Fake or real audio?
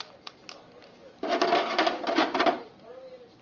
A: real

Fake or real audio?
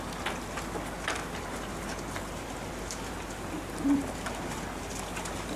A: real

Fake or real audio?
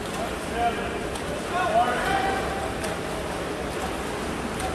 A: real